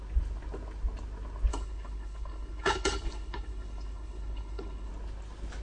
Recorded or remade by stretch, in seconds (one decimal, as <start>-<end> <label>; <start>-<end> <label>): 0.0-1.5 recorded; 1.5-4.9 remade; 4.9-5.6 recorded